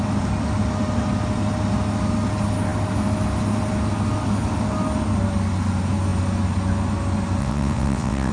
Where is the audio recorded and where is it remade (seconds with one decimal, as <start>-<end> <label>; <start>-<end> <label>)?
0.0-7.4 recorded; 7.4-8.3 remade